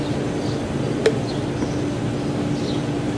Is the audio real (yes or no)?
yes